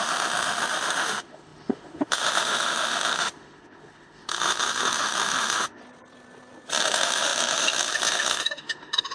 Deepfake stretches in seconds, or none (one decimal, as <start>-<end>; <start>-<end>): 0.0-5.8; 6.8-9.1